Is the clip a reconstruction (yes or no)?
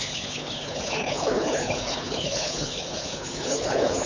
yes